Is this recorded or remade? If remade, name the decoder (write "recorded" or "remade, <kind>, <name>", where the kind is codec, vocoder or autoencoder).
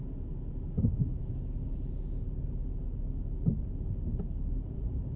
recorded